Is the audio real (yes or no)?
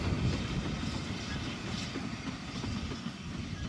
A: yes